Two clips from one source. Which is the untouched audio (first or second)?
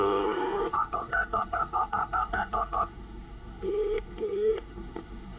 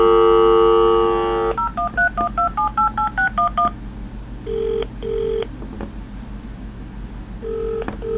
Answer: second